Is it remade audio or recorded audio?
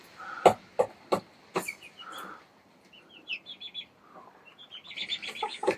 recorded